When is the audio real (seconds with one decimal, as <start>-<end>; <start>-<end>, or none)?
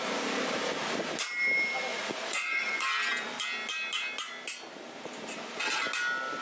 0.0-1.9; 2.7-6.4